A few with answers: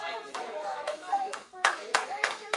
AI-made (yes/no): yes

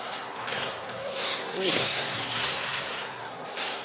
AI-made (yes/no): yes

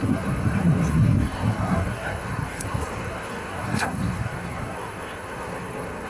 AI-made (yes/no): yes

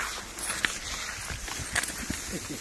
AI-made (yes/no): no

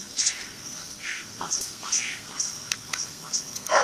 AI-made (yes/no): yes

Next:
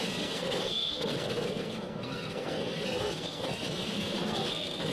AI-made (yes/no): yes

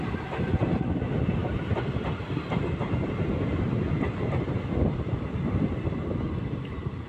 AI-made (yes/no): no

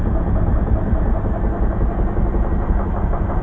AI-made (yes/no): no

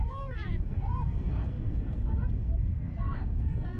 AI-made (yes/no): yes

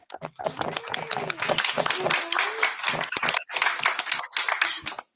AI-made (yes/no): no